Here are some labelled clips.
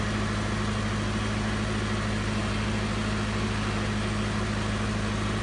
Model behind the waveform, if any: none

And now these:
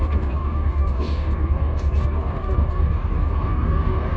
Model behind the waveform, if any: codec, DAC